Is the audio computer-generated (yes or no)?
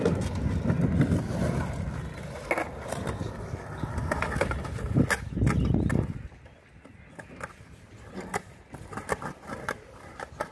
no